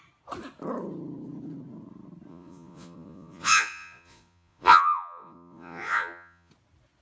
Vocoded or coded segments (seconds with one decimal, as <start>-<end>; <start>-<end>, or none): 2.3-6.5